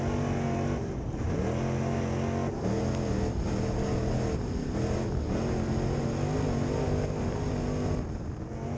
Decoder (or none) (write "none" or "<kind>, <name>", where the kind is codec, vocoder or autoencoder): none